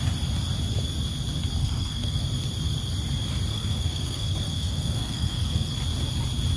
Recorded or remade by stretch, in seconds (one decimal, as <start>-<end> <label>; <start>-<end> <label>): 0.0-1.6 recorded; 1.6-2.2 remade; 2.2-3.5 recorded; 3.5-5.7 remade; 5.7-6.6 recorded